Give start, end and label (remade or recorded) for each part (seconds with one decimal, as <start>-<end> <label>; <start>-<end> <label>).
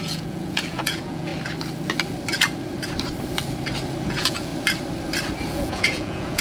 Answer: 0.0-1.3 remade; 1.3-4.1 recorded; 4.1-4.5 remade; 4.5-5.5 recorded; 5.5-6.4 remade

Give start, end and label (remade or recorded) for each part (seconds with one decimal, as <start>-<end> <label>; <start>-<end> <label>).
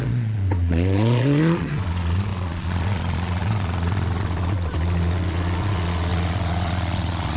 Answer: 0.0-7.4 remade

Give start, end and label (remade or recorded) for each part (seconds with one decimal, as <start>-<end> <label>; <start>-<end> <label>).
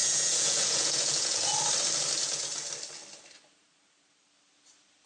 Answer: 0.0-1.5 remade; 1.5-2.2 recorded; 2.2-2.7 remade; 2.7-5.1 recorded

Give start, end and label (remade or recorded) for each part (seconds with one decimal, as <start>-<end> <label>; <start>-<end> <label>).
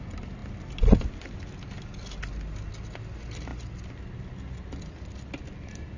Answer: 0.0-6.0 recorded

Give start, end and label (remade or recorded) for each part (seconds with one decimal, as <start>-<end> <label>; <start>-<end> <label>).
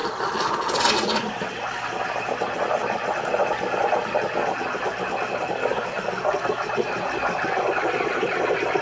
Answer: 0.0-8.8 recorded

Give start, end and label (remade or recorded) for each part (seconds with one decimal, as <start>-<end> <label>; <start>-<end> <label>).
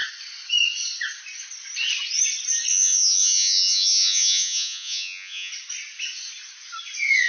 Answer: 0.0-2.7 recorded; 2.7-5.5 remade; 5.5-7.3 recorded